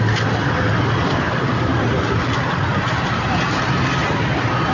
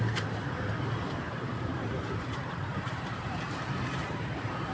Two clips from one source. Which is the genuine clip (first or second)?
first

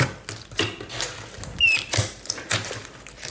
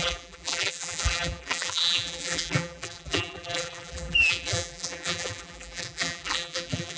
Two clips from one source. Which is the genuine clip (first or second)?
first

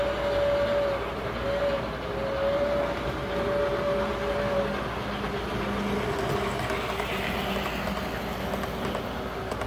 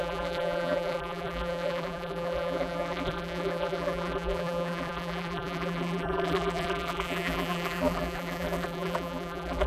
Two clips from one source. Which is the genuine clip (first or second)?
first